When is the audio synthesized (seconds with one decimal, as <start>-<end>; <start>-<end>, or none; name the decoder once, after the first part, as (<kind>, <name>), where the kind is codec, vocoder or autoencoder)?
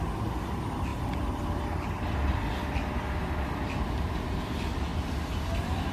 none